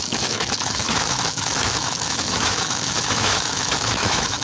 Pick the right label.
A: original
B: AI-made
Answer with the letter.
B